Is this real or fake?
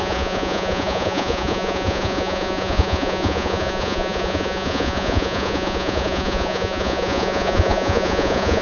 fake